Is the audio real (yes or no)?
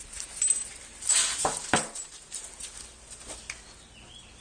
yes